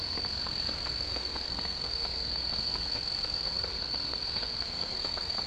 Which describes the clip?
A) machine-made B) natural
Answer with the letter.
A